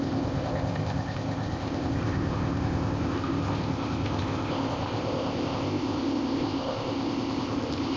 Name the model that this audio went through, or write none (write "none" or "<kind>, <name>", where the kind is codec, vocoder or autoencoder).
codec, ZipCodec